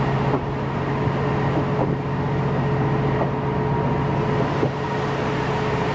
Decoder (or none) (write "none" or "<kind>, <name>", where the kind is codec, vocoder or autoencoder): none